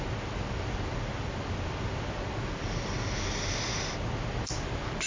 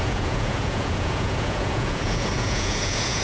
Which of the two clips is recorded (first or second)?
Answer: first